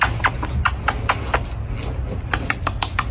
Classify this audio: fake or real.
real